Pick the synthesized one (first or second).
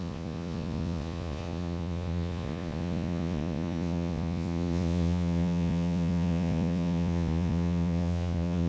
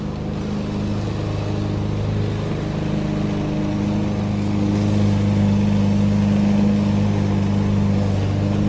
first